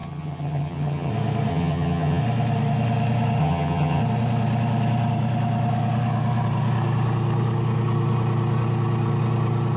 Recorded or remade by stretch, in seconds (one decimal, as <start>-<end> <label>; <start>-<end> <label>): 0.0-1.1 remade; 1.1-1.5 recorded; 1.5-2.2 remade; 2.2-3.4 recorded; 3.4-4.0 remade; 4.0-9.8 recorded